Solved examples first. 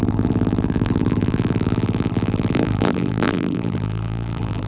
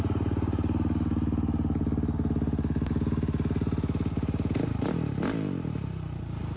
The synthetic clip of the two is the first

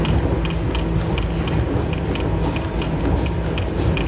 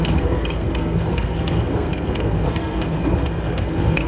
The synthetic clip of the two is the second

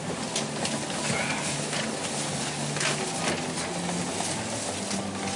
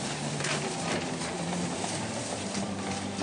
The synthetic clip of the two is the second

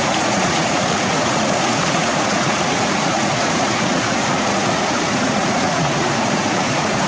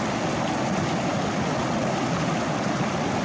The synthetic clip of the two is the first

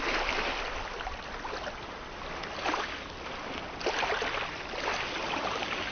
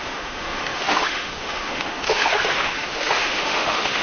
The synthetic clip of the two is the second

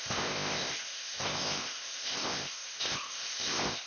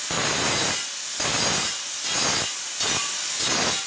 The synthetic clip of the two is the first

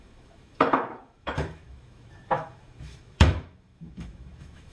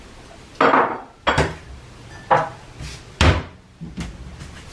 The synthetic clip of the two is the first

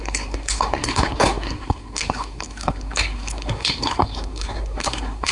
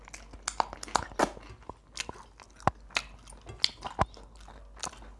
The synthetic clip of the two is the first